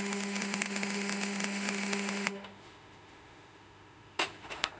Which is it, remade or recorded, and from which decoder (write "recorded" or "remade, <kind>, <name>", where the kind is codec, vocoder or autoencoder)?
remade, autoencoder, DAC-VAE